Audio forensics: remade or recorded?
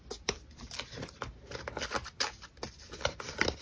recorded